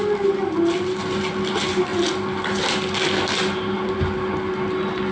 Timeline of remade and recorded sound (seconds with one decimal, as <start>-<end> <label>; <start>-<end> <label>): 0.0-5.1 recorded